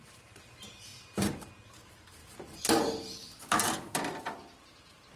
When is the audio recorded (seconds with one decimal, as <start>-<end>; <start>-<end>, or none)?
0.9-1.7; 3.9-5.2